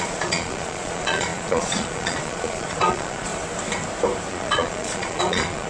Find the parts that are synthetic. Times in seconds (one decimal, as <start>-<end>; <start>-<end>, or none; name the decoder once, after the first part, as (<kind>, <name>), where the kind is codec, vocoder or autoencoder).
0.0-3.3 (vocoder, Vocos); 4.3-5.7